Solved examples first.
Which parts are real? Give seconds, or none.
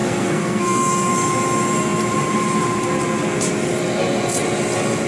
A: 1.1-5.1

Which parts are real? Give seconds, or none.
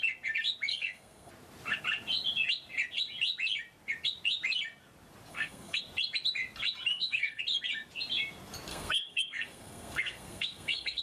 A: 0.0-0.7; 1.3-5.3; 5.8-6.9; 7.4-8.7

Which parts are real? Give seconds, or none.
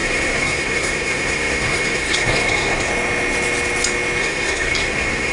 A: 2.9-4.2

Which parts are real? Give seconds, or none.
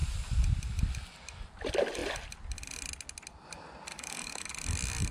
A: 0.0-3.9; 4.5-5.1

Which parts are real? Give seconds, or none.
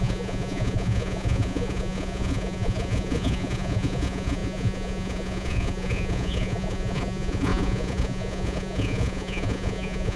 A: none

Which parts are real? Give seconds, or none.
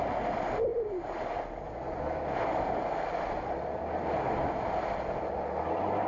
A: 0.0-6.1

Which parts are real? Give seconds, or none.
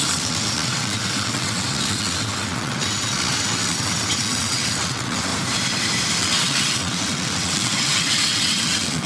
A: 5.3-6.2